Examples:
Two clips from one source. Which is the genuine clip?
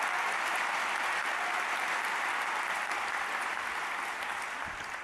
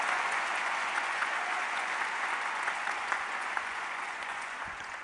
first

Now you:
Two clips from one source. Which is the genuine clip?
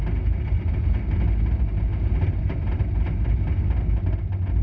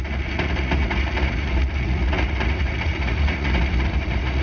first